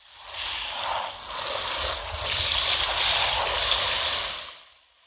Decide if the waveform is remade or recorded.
recorded